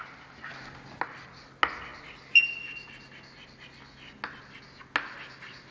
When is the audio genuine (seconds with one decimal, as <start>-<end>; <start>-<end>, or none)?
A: 0.0-5.7